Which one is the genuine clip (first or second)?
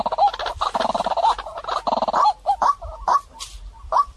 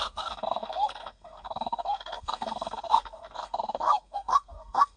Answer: first